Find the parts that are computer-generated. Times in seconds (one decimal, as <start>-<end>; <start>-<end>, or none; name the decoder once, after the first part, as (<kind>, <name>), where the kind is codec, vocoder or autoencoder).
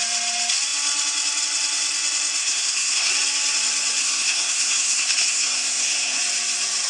2.4-3.1 (codec, SNAC); 4.0-6.2